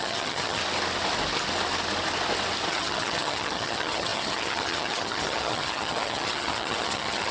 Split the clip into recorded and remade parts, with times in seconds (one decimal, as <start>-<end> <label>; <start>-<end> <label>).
0.0-0.6 remade; 0.6-2.7 recorded; 2.7-7.3 remade